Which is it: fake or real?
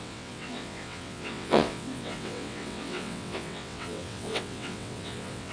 fake